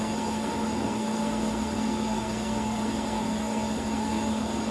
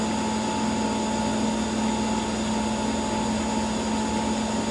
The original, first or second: second